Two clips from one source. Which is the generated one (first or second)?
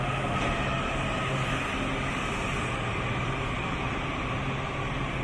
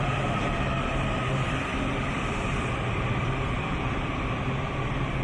second